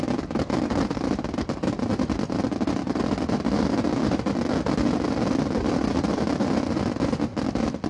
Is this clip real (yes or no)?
yes